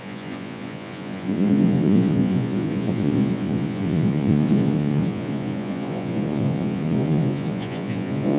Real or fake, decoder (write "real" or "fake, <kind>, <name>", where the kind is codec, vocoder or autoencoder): fake, vocoder, Vocos